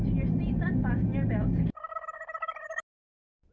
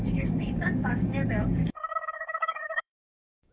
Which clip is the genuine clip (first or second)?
first